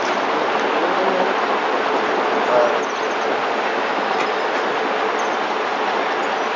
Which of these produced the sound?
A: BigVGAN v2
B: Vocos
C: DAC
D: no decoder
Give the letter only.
D